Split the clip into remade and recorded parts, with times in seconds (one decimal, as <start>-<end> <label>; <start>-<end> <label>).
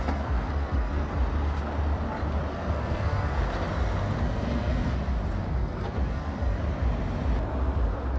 0.0-1.1 remade; 1.1-2.5 recorded; 2.5-3.4 remade; 3.4-4.3 recorded; 4.3-4.9 remade; 4.9-5.6 recorded; 5.6-6.6 remade; 6.6-8.2 recorded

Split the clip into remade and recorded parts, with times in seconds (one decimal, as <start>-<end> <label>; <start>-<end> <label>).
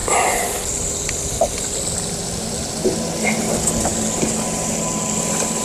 0.0-5.6 recorded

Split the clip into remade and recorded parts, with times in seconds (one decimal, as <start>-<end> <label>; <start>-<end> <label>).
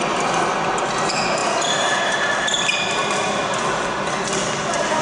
0.0-5.0 recorded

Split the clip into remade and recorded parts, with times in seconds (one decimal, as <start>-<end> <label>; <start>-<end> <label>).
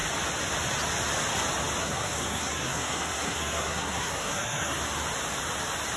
0.0-1.8 recorded; 1.8-4.8 remade; 4.8-6.0 recorded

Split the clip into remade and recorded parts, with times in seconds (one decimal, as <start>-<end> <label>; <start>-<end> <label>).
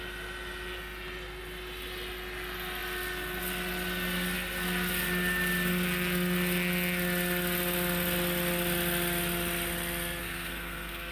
0.0-10.2 recorded; 10.2-11.1 remade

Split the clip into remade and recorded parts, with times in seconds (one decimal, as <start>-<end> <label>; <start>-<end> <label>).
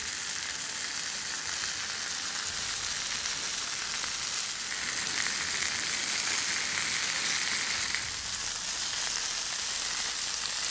0.0-10.7 recorded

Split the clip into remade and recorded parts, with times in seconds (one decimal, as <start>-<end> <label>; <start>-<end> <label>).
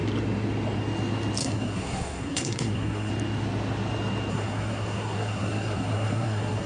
0.0-1.4 recorded; 1.4-3.1 remade; 3.1-4.3 recorded; 4.3-6.7 remade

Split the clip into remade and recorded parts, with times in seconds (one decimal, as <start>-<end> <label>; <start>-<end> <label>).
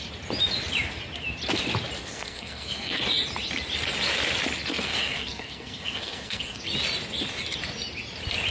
0.0-2.0 recorded; 2.0-3.0 remade; 3.0-4.7 recorded; 4.7-6.6 remade; 6.6-8.5 recorded